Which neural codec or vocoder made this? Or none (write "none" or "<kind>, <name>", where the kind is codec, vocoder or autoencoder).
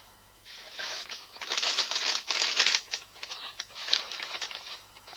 autoencoder, DAC-VAE